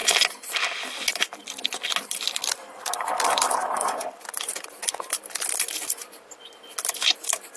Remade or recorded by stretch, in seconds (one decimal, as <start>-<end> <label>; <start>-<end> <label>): 0.0-2.0 recorded; 2.0-4.5 remade; 4.5-7.6 recorded

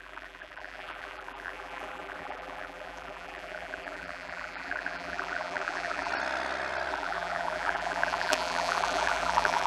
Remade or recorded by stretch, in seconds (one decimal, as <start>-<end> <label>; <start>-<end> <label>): 0.0-6.1 remade; 6.1-6.9 recorded; 6.9-9.7 remade

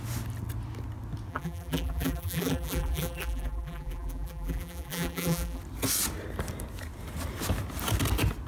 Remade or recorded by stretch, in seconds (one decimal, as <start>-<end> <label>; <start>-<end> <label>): 0.0-1.3 recorded; 1.3-5.6 remade; 5.6-8.5 recorded